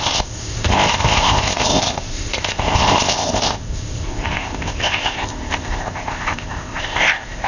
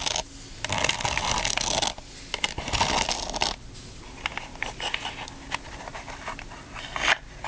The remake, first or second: first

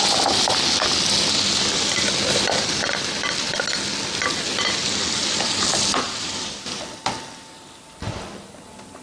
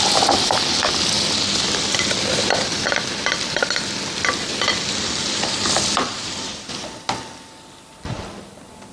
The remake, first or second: second